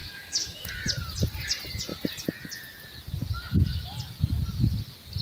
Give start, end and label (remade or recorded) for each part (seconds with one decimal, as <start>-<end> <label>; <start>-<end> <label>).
0.0-0.7 remade; 0.7-5.2 recorded